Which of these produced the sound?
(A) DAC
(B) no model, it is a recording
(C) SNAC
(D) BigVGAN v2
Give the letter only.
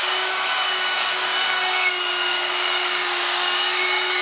A